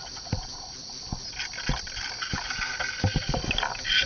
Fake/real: real